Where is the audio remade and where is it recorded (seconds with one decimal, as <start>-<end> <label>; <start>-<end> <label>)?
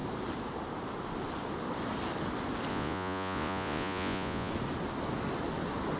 0.0-2.7 recorded; 2.7-4.5 remade; 4.5-6.0 recorded